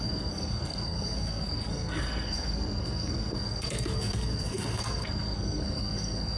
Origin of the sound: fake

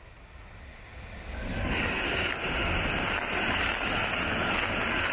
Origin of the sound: real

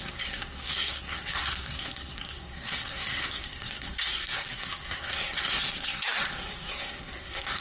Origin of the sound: fake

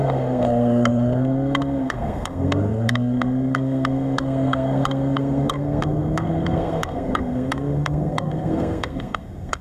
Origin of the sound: fake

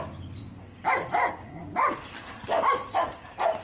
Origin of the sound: real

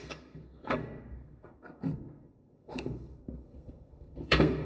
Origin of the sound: fake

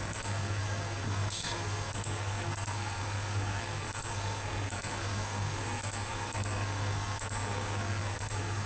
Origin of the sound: fake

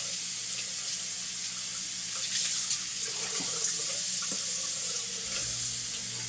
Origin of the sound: real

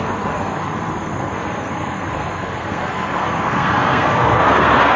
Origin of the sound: fake